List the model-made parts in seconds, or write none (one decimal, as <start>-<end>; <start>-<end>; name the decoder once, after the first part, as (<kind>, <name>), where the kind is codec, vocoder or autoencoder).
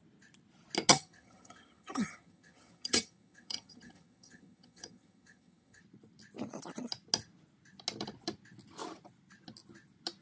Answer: 0.9-5.8 (vocoder, HiFi-GAN)